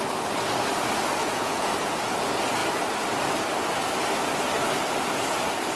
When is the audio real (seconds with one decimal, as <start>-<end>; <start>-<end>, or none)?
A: 0.0-1.2; 1.7-5.8